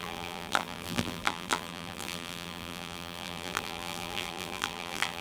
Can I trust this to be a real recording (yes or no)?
no